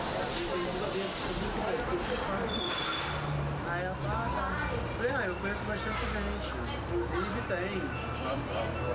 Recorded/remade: recorded